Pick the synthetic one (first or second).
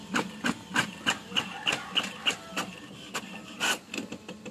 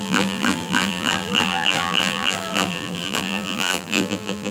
second